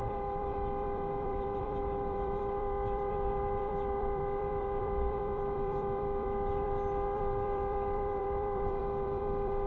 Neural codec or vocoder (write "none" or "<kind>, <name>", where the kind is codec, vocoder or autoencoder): vocoder, BigVGAN v2